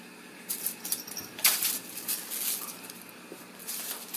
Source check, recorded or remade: recorded